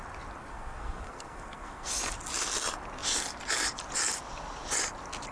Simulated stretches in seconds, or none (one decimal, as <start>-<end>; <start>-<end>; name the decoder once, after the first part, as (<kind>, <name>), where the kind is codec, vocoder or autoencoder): 0.4-1.9 (codec, SNAC)